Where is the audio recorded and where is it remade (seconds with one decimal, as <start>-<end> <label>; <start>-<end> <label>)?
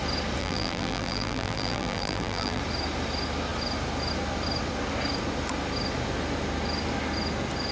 0.0-0.4 recorded; 0.4-2.6 remade; 2.6-7.7 recorded